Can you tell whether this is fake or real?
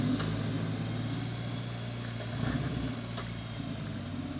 real